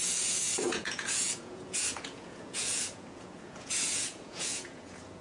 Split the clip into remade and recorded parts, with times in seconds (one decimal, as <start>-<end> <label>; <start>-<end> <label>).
0.0-5.2 remade